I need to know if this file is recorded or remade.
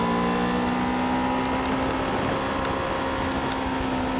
recorded